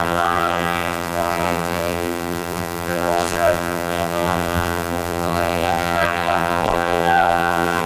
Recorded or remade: remade